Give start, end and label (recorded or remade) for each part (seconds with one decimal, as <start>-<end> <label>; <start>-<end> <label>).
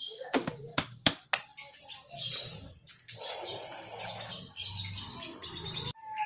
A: 0.0-0.7 remade; 0.7-4.3 recorded; 4.3-6.3 remade